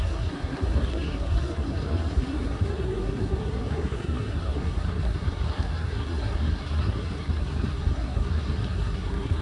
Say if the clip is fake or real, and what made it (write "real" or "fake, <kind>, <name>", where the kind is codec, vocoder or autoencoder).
fake, codec, SNAC